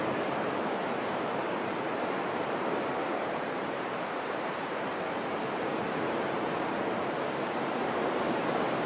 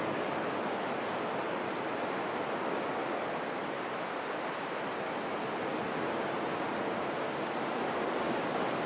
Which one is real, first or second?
second